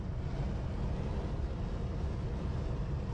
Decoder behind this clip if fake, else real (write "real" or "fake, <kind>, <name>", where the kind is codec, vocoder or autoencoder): real